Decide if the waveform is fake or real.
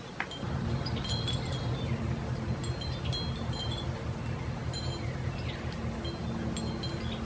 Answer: real